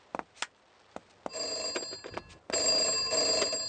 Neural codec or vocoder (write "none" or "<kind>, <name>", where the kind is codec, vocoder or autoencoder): none